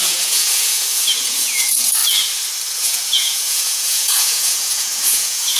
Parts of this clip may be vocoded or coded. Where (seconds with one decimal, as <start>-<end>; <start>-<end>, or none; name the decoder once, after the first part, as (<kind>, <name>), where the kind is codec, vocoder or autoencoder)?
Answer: 0.0-2.0 (vocoder, Vocos); 2.7-5.6

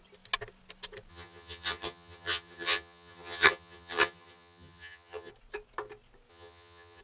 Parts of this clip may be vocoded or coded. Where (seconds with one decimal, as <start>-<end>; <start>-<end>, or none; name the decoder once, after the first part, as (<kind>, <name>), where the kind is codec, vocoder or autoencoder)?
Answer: 1.1-5.3 (vocoder, HiFi-GAN); 6.3-7.0

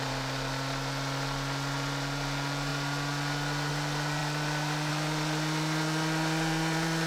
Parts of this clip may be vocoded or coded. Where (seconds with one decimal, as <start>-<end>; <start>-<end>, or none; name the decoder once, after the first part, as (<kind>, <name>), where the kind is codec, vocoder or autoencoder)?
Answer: 0.0-2.7 (vocoder, BigVGAN v2); 3.7-7.1